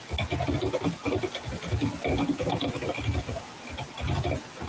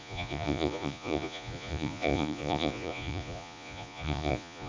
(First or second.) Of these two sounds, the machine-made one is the second